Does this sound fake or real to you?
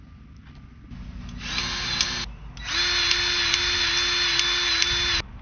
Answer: real